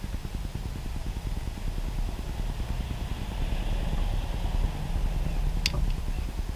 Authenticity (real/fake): real